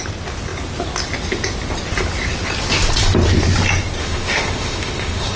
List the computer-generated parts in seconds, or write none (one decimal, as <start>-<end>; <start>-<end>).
4.0-5.4